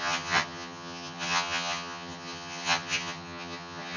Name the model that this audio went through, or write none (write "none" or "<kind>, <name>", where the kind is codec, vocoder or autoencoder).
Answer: vocoder, HiFi-GAN